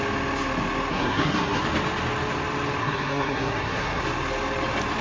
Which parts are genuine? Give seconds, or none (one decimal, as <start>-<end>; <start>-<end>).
0.0-0.9; 1.6-2.8; 4.0-5.0